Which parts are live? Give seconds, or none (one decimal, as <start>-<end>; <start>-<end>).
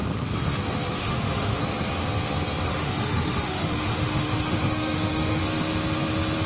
0.0-1.0; 1.6-2.7; 5.4-6.5